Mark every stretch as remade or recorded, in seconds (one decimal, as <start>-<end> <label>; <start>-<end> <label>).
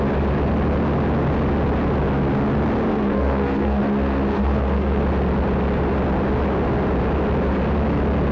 0.0-2.9 recorded; 2.9-3.8 remade; 3.8-4.3 recorded; 4.3-5.0 remade; 5.0-8.3 recorded